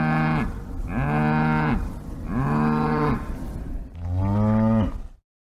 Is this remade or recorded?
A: recorded